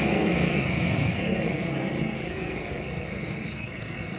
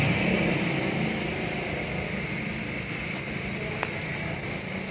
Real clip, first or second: second